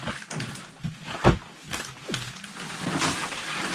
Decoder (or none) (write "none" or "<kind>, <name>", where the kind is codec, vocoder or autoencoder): none